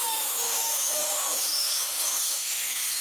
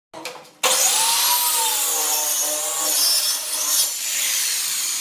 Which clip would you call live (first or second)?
second